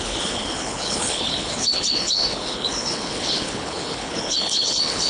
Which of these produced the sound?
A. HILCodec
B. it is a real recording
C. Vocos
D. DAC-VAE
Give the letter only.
A